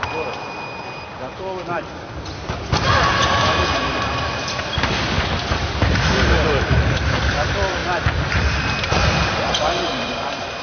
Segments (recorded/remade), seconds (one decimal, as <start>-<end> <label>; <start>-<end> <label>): 0.0-10.6 remade